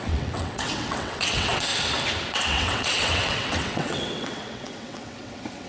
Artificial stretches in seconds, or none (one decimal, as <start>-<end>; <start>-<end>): 0.0-1.7; 2.3-5.7